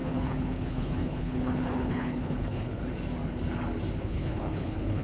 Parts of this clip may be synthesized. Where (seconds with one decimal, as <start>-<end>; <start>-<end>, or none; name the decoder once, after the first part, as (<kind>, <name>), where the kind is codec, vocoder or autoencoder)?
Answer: 0.0-2.8 (codec, HILCodec); 4.0-5.0